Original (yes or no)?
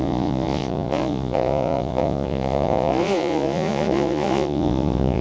no